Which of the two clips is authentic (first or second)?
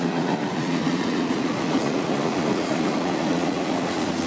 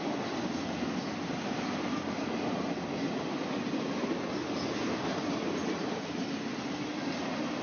second